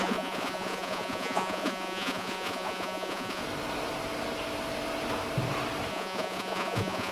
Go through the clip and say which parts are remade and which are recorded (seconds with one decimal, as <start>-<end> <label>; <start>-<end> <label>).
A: 0.0-3.4 remade; 3.4-5.9 recorded; 5.9-7.1 remade